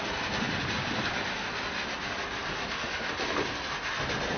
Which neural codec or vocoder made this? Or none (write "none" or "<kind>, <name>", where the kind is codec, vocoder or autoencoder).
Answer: none